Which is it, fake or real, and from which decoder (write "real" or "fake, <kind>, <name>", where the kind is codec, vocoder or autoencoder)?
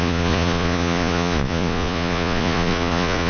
fake, vocoder, Vocos